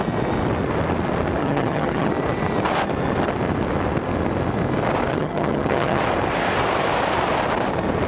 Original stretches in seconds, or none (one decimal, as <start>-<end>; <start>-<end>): 0.0-1.4; 2.1-5.1; 6.0-8.1